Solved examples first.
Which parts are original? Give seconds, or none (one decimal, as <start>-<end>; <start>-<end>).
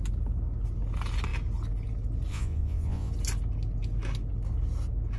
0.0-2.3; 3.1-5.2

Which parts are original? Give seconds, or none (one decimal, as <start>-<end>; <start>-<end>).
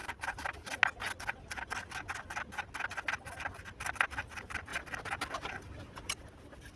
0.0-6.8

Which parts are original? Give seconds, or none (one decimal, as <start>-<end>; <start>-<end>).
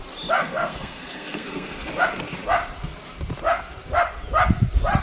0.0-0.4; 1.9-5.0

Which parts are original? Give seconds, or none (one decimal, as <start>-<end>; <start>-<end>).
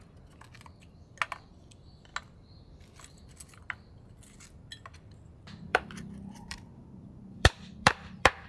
0.0-5.7